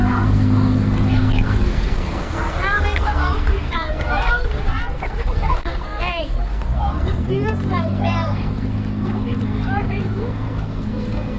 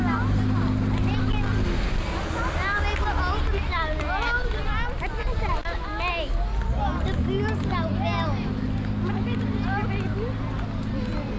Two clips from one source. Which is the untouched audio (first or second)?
second